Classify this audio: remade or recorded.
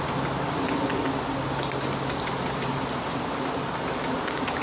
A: recorded